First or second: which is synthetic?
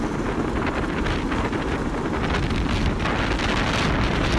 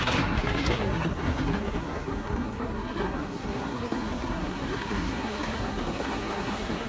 second